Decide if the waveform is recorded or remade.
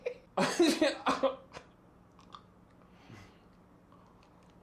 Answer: recorded